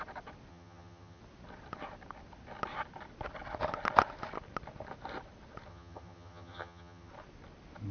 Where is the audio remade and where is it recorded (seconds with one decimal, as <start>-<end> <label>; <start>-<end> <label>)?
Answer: 0.0-0.5 recorded; 0.5-1.2 remade; 1.2-5.7 recorded; 5.7-7.1 remade; 7.1-7.9 recorded